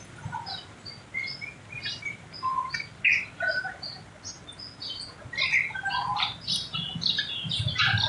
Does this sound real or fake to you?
real